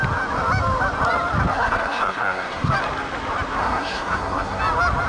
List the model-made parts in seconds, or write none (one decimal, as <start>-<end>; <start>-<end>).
1.5-2.7; 3.6-4.6